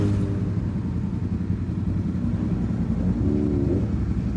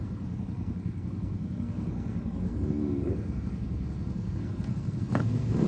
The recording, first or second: first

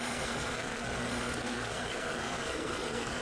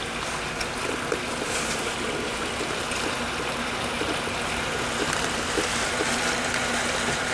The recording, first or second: second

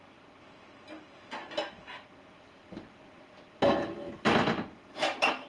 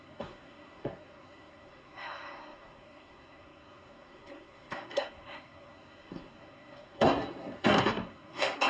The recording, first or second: first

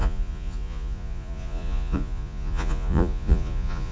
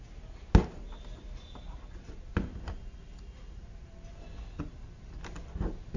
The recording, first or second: second